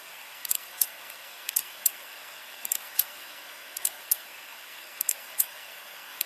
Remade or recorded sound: remade